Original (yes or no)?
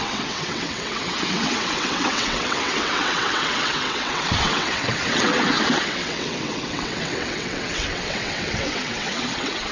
no